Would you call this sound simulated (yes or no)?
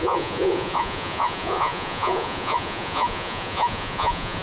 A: yes